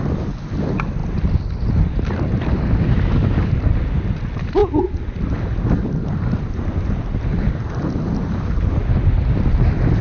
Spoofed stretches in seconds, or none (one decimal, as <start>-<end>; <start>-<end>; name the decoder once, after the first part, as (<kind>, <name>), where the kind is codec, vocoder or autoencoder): none